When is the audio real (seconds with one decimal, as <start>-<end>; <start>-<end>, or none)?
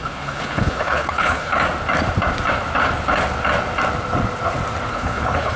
1.5-4.9